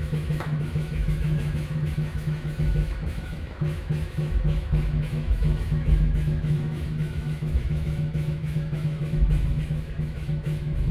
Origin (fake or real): fake